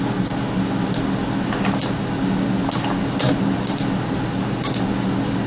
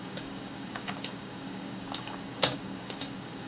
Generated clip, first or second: second